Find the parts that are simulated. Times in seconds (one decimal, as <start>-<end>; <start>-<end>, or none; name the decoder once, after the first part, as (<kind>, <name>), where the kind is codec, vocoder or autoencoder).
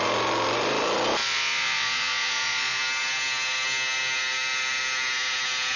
1.2-2.8 (vocoder, Vocos)